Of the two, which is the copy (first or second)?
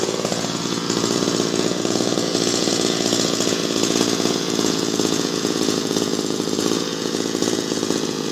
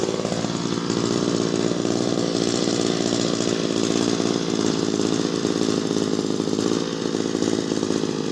first